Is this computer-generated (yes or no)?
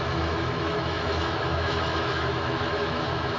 yes